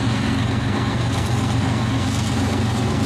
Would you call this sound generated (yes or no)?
yes